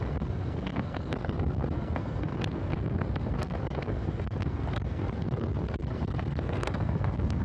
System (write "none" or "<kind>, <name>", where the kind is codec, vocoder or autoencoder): codec, SNAC